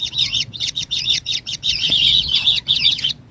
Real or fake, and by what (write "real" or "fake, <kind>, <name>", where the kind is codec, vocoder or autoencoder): fake, vocoder, Vocos